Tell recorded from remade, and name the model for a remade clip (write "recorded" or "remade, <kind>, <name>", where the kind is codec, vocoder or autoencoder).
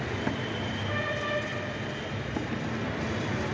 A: recorded